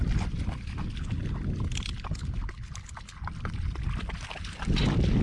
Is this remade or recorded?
recorded